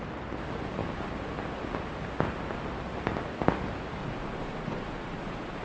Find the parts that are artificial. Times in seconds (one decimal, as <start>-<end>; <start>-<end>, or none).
4.0-5.6